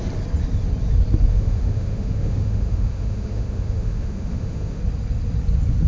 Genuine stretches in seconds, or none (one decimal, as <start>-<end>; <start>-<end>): 0.0-1.3; 4.8-5.9